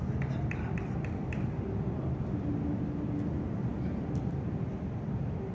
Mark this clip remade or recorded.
recorded